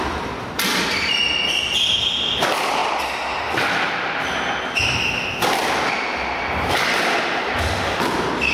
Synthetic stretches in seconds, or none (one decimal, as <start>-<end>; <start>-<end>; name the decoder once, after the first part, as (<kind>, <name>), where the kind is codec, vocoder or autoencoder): none